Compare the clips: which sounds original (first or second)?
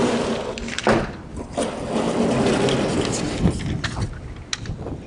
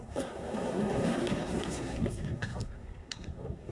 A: first